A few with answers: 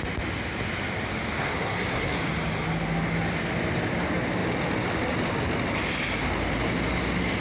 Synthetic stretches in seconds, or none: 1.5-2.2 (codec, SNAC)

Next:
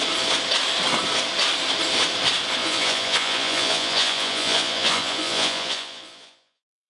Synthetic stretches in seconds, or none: 2.6-6.9 (vocoder, Vocos)

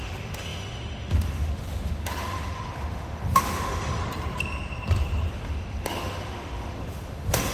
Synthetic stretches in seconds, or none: 0.0-4.0 (autoencoder, DAC-VAE); 5.3-7.5

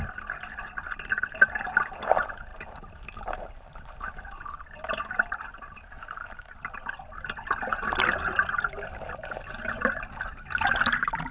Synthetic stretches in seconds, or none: 2.5-4.1 (vocoder, BigVGAN v2)

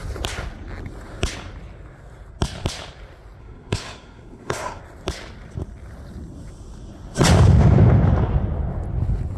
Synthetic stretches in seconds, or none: 3.4-4.8 (codec, SNAC)